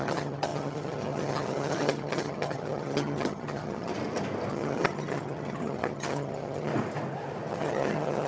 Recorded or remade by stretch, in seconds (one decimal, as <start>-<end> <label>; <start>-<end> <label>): 0.0-3.9 remade; 3.9-4.5 recorded; 4.5-6.7 remade; 6.7-7.5 recorded; 7.5-8.3 remade